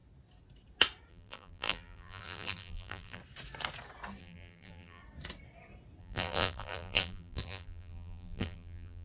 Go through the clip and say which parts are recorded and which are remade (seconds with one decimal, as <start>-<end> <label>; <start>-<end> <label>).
0.0-1.1 recorded; 1.1-3.2 remade; 3.2-4.2 recorded; 4.2-5.0 remade; 5.0-6.0 recorded; 6.0-9.0 remade